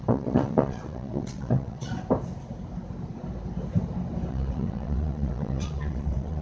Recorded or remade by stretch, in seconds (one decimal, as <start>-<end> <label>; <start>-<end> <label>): 0.0-1.9 remade; 1.9-4.3 recorded; 4.3-6.4 remade